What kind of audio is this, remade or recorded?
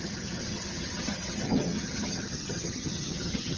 remade